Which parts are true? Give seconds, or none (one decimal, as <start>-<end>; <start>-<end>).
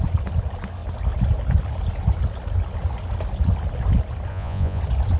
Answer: 0.0-4.3; 4.8-5.2